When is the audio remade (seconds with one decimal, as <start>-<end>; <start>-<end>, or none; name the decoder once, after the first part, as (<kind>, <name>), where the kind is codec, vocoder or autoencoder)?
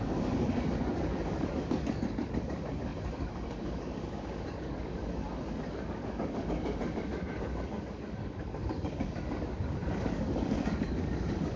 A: 0.0-11.6 (codec, DAC)